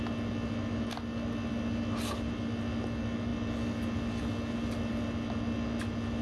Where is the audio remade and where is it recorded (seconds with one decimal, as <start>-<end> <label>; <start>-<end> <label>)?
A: 0.0-6.2 recorded